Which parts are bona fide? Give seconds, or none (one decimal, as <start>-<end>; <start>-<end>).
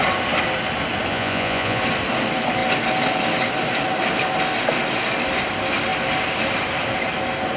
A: 0.0-1.1; 1.8-7.6